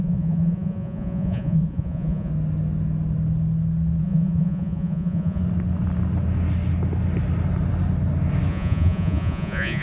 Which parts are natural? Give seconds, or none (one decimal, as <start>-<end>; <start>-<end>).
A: 2.3-4.0; 5.4-8.5